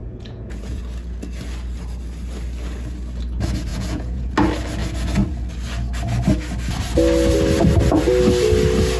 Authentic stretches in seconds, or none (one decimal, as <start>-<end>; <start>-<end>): 0.8-3.7; 4.3-9.0